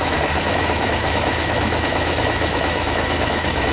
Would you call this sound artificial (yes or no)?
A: yes